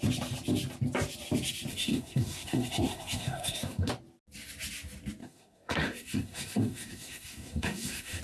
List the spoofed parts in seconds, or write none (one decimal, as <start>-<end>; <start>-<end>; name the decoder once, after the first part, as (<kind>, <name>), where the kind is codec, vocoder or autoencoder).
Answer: 1.7-3.9 (codec, SNAC); 5.2-8.2